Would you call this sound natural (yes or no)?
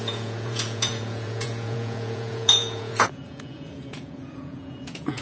no